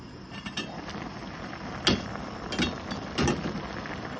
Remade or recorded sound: recorded